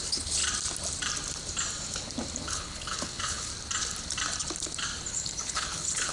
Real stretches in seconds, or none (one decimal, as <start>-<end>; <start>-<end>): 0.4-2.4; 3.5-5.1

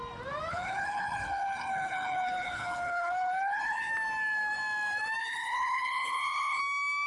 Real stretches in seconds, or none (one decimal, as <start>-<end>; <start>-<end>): 0.0-0.5; 3.9-5.2; 6.6-7.1

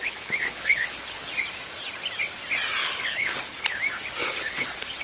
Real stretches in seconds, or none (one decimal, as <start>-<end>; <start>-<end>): 1.3-2.8; 3.8-4.2